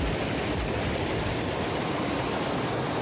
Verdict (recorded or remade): recorded